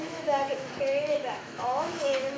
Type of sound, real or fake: fake